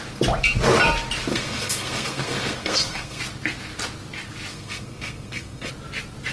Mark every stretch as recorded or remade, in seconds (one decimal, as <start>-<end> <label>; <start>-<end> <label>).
0.0-1.3 recorded; 1.3-3.2 remade; 3.2-4.5 recorded; 4.5-5.7 remade; 5.7-6.3 recorded